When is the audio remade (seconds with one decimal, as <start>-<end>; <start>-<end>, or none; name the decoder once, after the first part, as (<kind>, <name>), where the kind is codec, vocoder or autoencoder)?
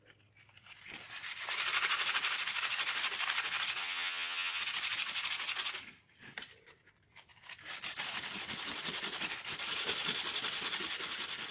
3.8-4.6 (vocoder, HiFi-GAN)